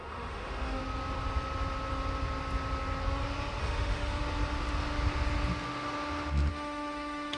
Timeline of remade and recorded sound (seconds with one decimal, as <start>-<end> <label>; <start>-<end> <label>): 0.0-0.8 remade; 0.8-3.6 recorded; 3.6-4.2 remade; 4.2-6.5 recorded; 6.5-7.4 remade